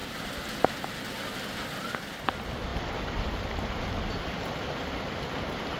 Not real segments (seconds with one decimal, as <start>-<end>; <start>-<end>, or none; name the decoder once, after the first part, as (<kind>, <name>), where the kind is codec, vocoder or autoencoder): 2.7-5.0 (vocoder, BigVGAN v2)